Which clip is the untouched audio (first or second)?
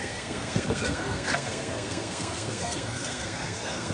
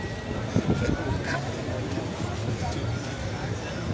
second